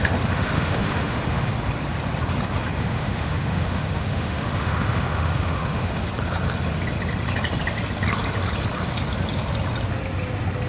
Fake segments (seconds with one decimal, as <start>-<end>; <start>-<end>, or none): 0.0-1.5; 2.8-6.0